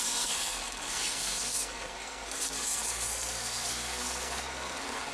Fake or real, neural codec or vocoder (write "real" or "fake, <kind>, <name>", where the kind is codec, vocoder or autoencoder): fake, codec, SNAC